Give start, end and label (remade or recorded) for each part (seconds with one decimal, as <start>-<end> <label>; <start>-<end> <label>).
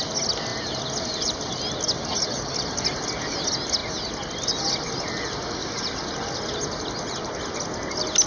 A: 0.0-5.6 recorded; 5.6-6.1 remade; 6.1-8.3 recorded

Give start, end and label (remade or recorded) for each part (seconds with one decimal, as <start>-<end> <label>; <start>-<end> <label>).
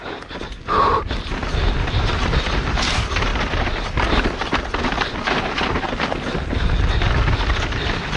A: 0.0-8.2 recorded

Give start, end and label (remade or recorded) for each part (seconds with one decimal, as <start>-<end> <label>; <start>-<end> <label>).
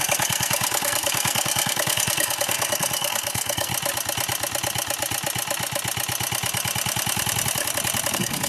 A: 0.0-3.7 remade; 3.7-8.1 recorded; 8.1-8.5 remade